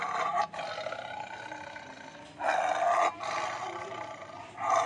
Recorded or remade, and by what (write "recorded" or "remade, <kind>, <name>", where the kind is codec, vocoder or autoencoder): recorded